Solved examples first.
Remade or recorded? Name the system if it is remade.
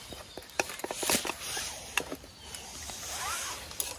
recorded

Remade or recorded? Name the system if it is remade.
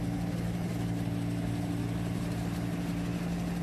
recorded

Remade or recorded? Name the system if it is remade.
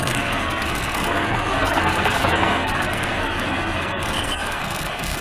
remade, codec, SNAC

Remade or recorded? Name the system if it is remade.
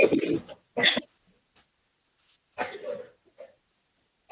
recorded